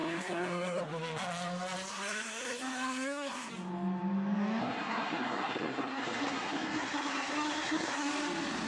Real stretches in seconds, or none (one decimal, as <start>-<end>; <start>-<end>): 0.8-1.9; 3.5-4.6; 8.1-8.7